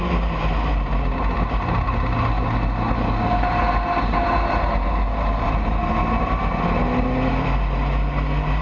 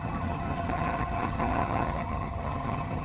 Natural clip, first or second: first